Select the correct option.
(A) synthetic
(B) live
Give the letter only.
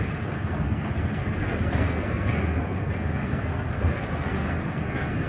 A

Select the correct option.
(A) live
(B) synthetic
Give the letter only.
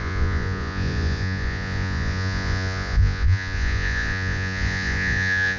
B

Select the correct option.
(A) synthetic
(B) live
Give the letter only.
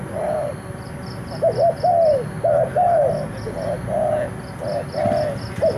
B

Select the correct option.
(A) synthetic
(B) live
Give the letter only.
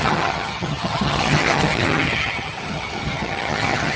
A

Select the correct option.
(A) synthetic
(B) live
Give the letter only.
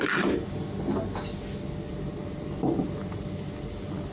B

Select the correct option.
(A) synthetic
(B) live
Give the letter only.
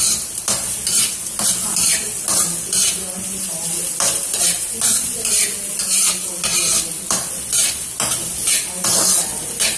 B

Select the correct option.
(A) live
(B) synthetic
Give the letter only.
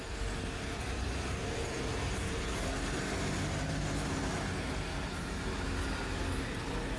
A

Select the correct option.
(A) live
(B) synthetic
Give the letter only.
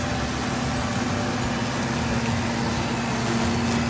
A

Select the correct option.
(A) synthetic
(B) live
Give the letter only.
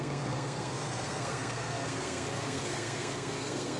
A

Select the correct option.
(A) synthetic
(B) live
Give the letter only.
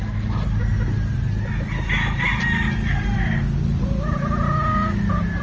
B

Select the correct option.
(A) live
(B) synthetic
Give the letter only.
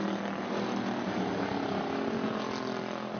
A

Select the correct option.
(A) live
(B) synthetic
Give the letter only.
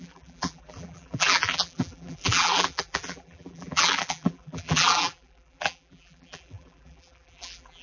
B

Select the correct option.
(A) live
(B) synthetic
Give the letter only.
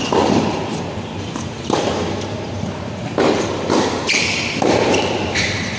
B